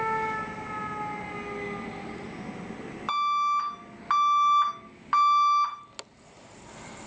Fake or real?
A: real